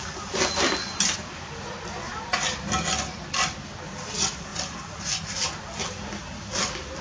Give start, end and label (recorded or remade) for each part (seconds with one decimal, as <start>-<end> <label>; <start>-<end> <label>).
0.0-7.0 recorded